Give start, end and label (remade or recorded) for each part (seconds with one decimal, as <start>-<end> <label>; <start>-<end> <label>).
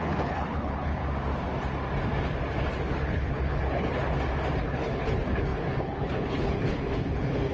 0.0-1.0 remade; 1.0-2.8 recorded; 2.8-4.0 remade; 4.0-4.6 recorded; 4.6-7.5 remade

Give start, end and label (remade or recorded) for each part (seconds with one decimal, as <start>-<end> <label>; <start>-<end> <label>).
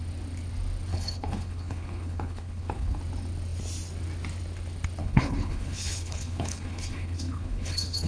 0.0-0.9 recorded; 0.9-3.0 remade; 3.0-5.0 recorded; 5.0-8.1 remade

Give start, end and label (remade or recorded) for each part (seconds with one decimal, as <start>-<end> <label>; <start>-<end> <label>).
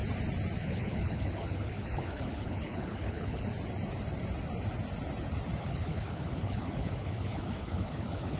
0.0-0.6 recorded; 0.6-3.5 remade; 3.5-5.6 recorded; 5.6-8.4 remade